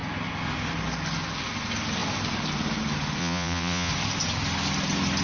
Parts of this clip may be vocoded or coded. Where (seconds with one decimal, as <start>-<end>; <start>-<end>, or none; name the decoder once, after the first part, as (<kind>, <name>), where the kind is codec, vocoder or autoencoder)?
3.2-3.9 (vocoder, Vocos)